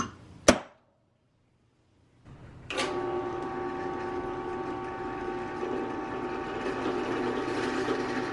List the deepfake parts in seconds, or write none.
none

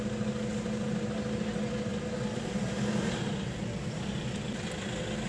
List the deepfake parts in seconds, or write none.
none

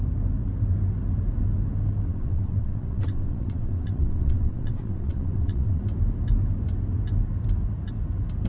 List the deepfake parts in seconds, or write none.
2.1-5.8 (vocoder, WaveNeXt)

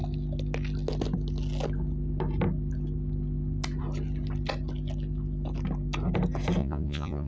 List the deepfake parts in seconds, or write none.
6.6-7.3 (vocoder, Vocos)

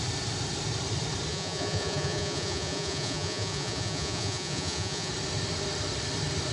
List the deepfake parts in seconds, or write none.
1.3-5.1 (vocoder, Vocos)

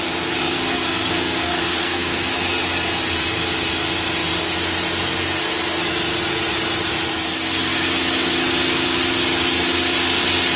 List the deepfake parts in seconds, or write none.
0.4-2.3 (codec, SNAC)

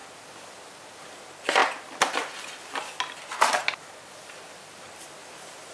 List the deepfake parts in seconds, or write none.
0.9-1.6 (vocoder, BigVGAN v2); 5.0-5.7

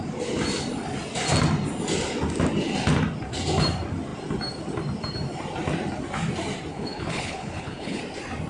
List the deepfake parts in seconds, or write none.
6.7-8.0 (codec, HILCodec)